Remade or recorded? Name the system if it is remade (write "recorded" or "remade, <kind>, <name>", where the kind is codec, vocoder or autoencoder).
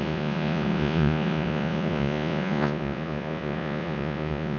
remade, vocoder, Vocos